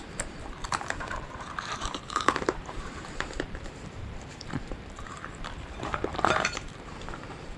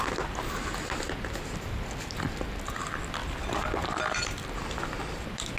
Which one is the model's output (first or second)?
first